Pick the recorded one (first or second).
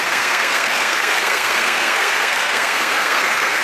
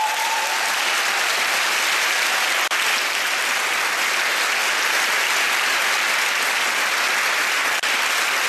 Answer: second